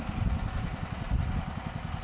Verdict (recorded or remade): recorded